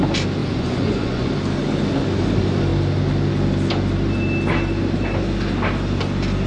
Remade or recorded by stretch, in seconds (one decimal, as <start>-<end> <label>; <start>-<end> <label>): 0.0-0.4 recorded; 0.4-1.3 remade; 1.3-6.5 recorded